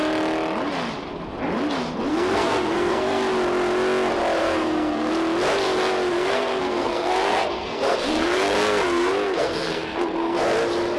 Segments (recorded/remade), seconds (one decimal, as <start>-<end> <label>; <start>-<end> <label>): 0.0-2.1 recorded; 2.1-3.2 remade; 3.2-4.4 recorded; 4.4-5.1 remade; 5.1-6.1 recorded; 6.1-10.4 remade; 10.4-11.0 recorded